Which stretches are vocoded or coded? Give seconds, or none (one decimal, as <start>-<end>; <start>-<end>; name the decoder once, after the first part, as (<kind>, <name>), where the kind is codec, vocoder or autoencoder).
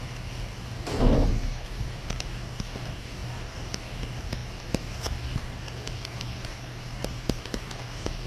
0.0-8.3 (codec, DAC)